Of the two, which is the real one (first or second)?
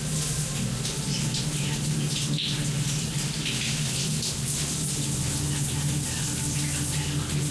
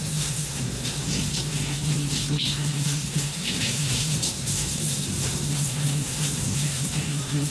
first